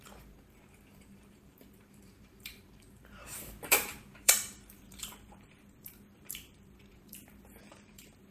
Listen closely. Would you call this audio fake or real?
fake